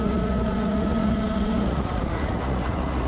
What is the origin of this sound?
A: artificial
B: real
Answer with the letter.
A